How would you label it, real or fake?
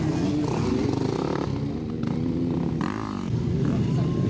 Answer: real